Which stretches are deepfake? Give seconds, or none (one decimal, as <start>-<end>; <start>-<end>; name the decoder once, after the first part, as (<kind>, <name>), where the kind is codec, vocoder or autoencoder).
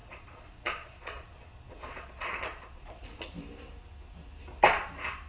0.0-3.2 (vocoder, Vocos)